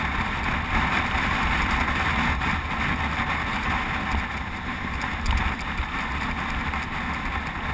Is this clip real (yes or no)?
yes